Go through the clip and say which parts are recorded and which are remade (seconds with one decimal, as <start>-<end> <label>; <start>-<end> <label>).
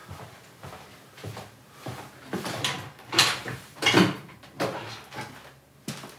0.0-0.7 remade; 0.7-1.2 recorded; 1.2-4.9 remade; 4.9-6.2 recorded